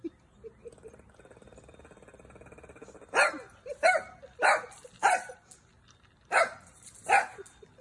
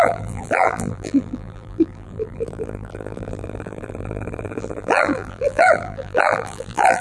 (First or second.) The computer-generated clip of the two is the second